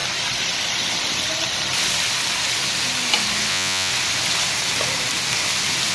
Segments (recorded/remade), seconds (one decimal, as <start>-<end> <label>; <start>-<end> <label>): 0.0-3.5 recorded; 3.5-3.9 remade; 3.9-5.9 recorded